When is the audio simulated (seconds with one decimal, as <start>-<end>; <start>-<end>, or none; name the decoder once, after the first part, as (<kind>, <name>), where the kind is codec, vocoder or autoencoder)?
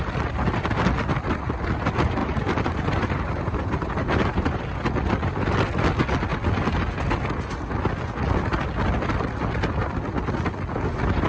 2.2-4.6 (vocoder, BigVGAN v2)